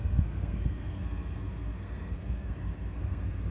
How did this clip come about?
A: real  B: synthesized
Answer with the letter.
B